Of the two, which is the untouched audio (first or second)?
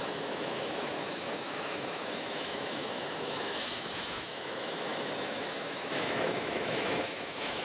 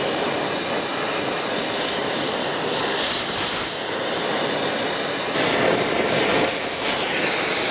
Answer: second